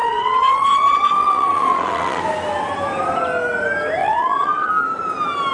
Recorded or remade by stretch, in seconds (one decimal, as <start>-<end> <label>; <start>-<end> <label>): 0.0-2.2 remade; 2.2-4.0 recorded; 4.0-4.7 remade; 4.7-5.5 recorded